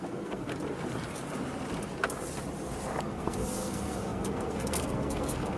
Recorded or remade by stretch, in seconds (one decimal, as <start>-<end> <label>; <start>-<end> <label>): 0.0-0.5 remade; 0.5-3.0 recorded; 3.0-5.6 remade